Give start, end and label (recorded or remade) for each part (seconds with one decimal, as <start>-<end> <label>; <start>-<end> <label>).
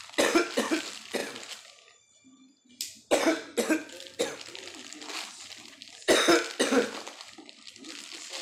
0.0-8.4 recorded